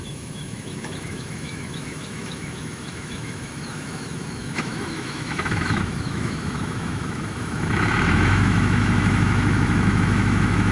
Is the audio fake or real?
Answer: fake